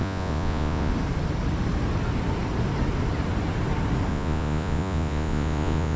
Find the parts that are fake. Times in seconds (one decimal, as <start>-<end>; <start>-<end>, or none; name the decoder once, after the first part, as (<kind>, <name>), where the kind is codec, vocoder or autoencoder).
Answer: 0.0-0.9 (vocoder, Vocos); 4.1-6.0